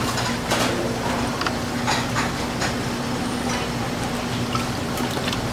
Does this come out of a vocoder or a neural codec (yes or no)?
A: no